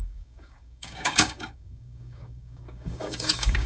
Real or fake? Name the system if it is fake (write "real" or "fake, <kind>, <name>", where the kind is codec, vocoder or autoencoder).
fake, codec, DAC